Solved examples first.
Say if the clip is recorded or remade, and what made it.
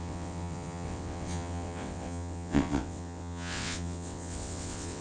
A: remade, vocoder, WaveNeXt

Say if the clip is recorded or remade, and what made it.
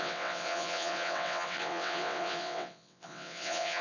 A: remade, vocoder, WaveNeXt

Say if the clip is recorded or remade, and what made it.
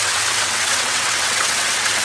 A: remade, vocoder, WaveNeXt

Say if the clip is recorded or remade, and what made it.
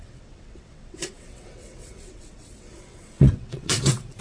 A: remade, vocoder, WaveNeXt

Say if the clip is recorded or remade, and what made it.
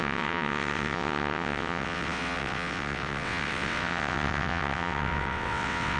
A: remade, vocoder, WaveNeXt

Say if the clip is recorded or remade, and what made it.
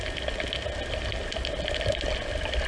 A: recorded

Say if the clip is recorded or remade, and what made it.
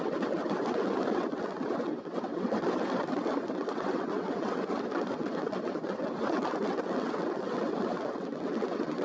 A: remade, vocoder, WaveNeXt